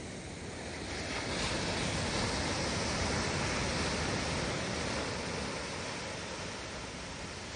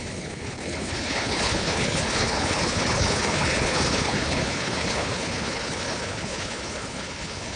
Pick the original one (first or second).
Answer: first